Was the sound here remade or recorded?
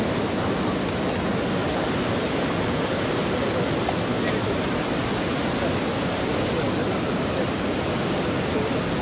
recorded